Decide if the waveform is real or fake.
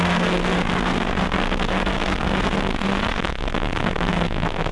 fake